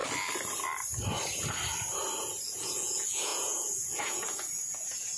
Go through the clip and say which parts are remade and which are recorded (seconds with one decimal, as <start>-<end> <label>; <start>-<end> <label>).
0.0-2.2 recorded; 2.2-5.2 remade